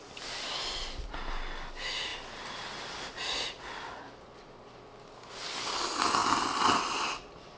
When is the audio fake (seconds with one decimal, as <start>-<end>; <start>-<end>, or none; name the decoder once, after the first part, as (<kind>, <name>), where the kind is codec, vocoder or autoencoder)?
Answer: none